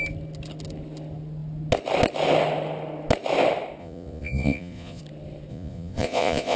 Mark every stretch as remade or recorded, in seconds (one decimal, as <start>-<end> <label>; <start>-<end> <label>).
0.0-3.8 recorded; 3.8-5.0 remade; 5.0-5.5 recorded; 5.5-6.6 remade